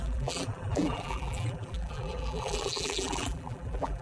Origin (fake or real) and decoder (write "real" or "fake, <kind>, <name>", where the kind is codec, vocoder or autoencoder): fake, vocoder, BigVGAN v2